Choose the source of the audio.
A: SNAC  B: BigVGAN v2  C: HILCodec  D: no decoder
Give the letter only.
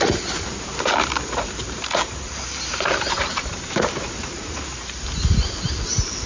B